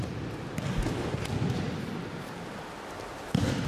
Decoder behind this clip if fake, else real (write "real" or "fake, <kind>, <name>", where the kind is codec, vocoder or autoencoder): real